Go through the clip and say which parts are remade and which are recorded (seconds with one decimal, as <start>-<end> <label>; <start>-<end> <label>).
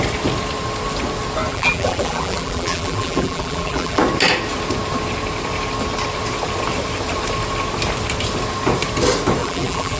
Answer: 0.0-1.5 recorded; 1.5-4.0 remade; 4.0-9.4 recorded; 9.4-10.0 remade